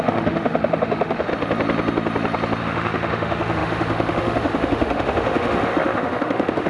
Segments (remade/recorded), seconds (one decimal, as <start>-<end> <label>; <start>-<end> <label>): 0.0-1.3 remade; 1.3-2.6 recorded; 2.6-6.7 remade